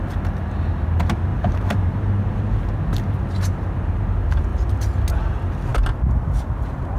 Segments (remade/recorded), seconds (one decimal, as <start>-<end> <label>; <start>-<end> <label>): 0.0-1.3 recorded; 1.3-2.4 remade; 2.4-7.0 recorded